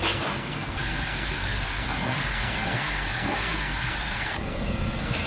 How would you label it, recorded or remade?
remade